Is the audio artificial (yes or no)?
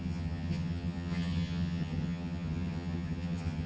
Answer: yes